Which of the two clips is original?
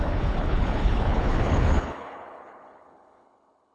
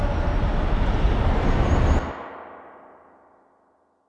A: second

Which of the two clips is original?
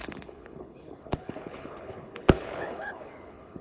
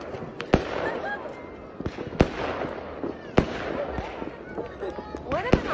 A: second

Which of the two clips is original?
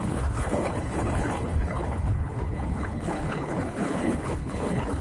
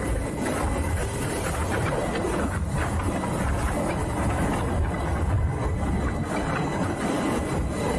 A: second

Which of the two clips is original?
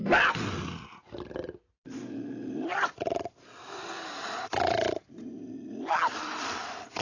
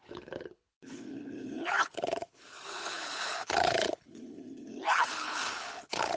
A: first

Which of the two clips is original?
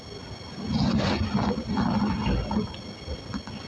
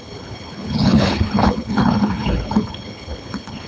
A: first